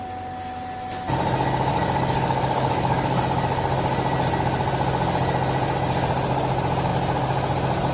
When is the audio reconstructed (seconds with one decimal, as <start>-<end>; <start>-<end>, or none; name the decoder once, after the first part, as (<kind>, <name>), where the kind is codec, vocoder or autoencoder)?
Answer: 1.7-3.2 (codec, DAC)